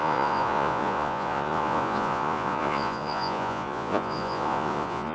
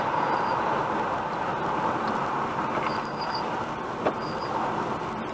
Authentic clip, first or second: second